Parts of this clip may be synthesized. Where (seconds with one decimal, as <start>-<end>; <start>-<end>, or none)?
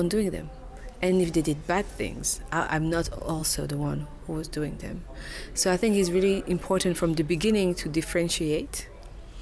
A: none